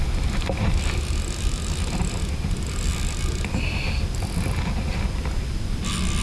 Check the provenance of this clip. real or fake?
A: real